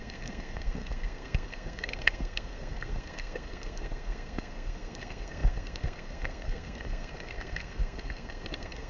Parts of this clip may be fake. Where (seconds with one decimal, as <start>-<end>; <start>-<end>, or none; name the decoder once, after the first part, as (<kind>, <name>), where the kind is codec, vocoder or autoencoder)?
0.0-8.9 (codec, SNAC)